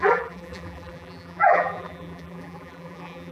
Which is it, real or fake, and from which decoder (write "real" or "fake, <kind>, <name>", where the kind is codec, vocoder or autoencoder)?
fake, vocoder, BigVGAN v2